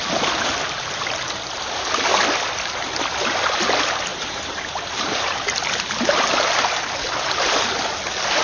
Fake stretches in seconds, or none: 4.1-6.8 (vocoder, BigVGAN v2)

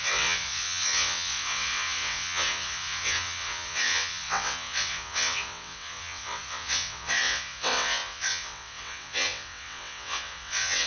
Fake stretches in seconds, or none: 0.0-10.9 (vocoder, WaveNeXt)

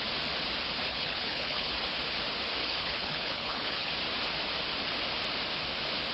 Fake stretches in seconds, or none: 0.8-1.7 (codec, HILCodec); 2.6-3.9

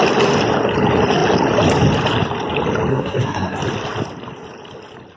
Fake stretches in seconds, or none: 2.9-3.6 (codec, SNAC)